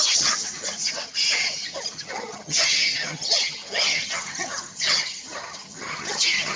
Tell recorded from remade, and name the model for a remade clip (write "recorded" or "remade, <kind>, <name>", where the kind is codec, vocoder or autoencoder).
remade, vocoder, HiFi-GAN